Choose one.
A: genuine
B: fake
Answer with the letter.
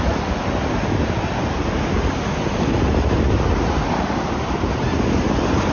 A